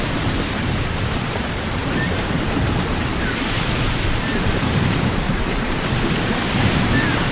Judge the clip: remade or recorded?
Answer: remade